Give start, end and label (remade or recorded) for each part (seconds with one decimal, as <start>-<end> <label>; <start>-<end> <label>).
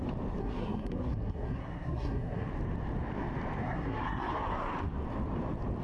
0.0-0.4 recorded; 0.4-2.5 remade; 2.5-3.6 recorded; 3.6-4.4 remade; 4.4-5.8 recorded